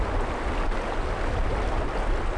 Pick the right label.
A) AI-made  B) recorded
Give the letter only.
B